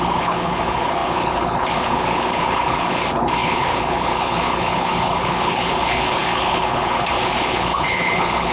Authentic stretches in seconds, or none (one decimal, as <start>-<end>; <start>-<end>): none